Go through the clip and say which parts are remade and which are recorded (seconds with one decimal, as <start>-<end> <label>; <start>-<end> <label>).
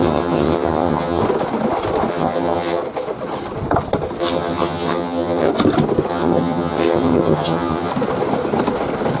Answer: 0.0-1.2 remade; 1.2-2.1 recorded; 2.1-2.8 remade; 2.8-4.2 recorded; 4.2-5.5 remade; 5.5-6.1 recorded; 6.1-7.9 remade; 7.9-9.2 recorded